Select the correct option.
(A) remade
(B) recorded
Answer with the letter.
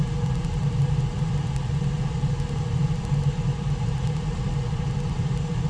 B